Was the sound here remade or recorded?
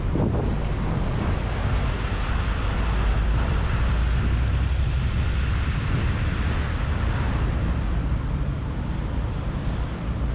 recorded